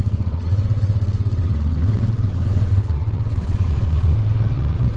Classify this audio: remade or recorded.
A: remade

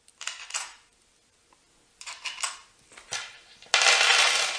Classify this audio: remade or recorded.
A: recorded